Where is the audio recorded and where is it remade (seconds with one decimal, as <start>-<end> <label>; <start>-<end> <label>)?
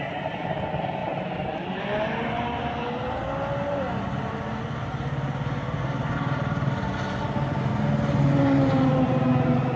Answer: 0.0-9.8 recorded